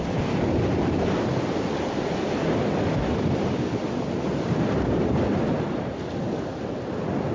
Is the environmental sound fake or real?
real